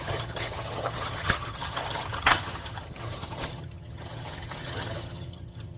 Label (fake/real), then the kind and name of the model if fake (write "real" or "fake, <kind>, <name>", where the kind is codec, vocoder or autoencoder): fake, vocoder, HiFi-GAN